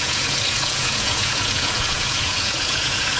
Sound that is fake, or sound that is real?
fake